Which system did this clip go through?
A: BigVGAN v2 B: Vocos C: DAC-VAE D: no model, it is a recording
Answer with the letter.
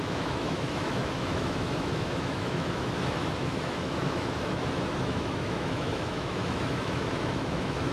C